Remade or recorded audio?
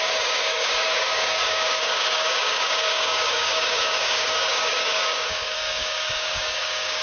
remade